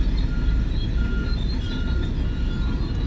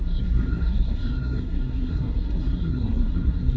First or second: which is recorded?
first